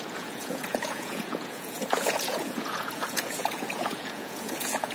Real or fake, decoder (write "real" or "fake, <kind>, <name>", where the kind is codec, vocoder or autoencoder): fake, vocoder, Vocos